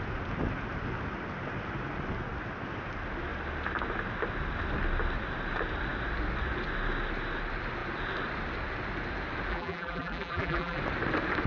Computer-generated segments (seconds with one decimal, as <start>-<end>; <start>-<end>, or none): 9.5-10.8